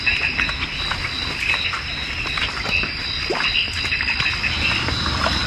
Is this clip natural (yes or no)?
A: yes